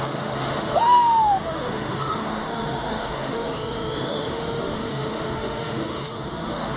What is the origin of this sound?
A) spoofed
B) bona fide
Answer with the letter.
A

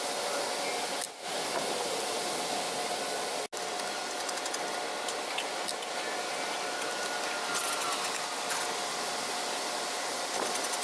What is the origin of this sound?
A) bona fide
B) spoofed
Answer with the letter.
A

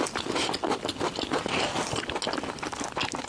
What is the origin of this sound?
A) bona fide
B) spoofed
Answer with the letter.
A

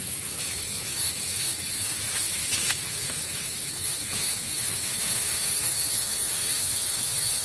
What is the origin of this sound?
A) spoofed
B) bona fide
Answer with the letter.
A